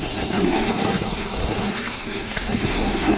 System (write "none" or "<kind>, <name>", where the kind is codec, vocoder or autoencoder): codec, SNAC